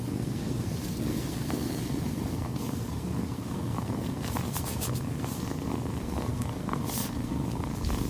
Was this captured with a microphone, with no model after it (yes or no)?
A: no